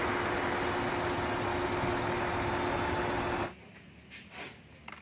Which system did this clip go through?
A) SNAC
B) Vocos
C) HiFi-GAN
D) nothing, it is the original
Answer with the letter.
D